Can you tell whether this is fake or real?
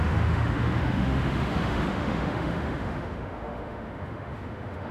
fake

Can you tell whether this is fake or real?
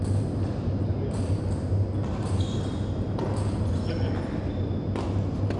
real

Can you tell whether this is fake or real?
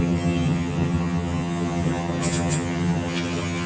fake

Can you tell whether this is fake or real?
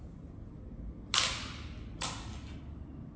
real